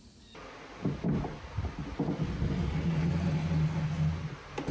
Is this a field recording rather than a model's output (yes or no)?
yes